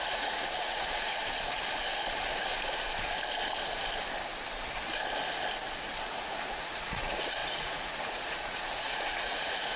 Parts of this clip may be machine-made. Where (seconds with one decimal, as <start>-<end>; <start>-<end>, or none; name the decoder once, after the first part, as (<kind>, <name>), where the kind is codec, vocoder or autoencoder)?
0.0-1.2 (vocoder, Vocos); 6.1-9.8